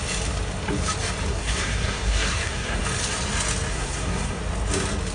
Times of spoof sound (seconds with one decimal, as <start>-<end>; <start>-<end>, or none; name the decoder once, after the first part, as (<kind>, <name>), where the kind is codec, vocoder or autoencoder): 1.3-2.8 (codec, SNAC); 3.7-4.4